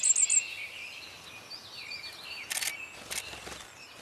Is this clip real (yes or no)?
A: yes